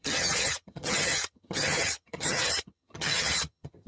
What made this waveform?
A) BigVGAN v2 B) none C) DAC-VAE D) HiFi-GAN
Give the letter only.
D